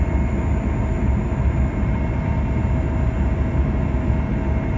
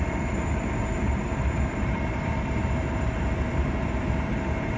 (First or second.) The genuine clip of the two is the first